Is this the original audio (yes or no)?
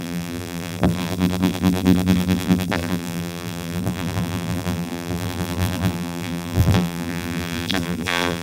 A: no